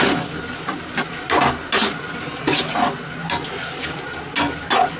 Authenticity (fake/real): real